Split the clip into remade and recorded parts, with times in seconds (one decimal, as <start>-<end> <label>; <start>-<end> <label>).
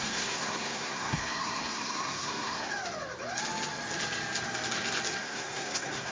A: 0.0-2.7 remade; 2.7-5.2 recorded; 5.2-6.1 remade